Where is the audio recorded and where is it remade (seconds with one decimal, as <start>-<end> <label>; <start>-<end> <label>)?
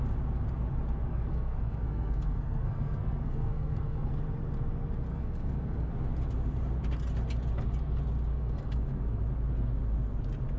0.0-1.1 recorded; 1.1-4.1 remade; 4.1-5.1 recorded; 5.1-5.9 remade; 5.9-8.3 recorded; 8.3-9.2 remade; 9.2-10.6 recorded